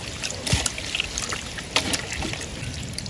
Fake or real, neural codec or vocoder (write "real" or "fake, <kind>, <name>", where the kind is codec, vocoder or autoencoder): real